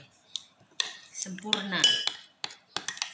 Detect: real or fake real